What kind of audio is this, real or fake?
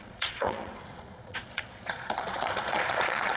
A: fake